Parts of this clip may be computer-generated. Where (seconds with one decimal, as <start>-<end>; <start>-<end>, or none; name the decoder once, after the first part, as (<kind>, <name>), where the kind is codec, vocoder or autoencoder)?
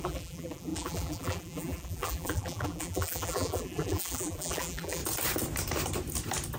0.0-5.0 (vocoder, BigVGAN v2)